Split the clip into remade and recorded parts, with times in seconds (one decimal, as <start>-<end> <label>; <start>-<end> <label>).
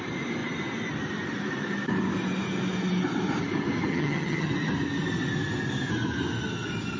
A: 0.0-3.9 recorded; 3.9-4.5 remade; 4.5-7.0 recorded